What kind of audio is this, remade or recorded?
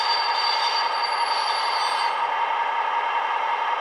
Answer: recorded